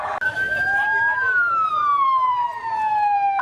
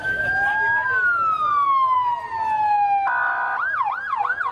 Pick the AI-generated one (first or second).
first